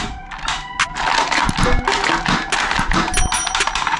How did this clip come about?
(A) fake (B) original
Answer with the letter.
B